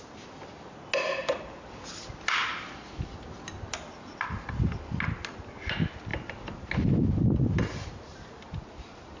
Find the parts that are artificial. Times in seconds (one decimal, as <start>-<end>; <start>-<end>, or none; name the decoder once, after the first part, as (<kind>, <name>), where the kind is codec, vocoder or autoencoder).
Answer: none